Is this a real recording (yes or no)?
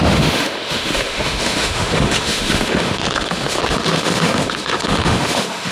no